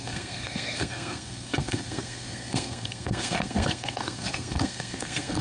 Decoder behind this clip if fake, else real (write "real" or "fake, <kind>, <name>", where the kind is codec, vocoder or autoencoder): fake, codec, SNAC